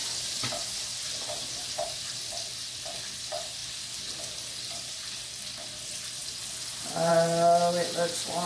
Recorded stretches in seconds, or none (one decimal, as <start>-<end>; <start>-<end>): 0.0-8.5